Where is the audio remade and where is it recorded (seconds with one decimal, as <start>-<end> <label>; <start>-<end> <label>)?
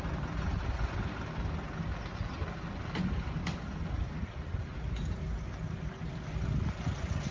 0.0-7.3 recorded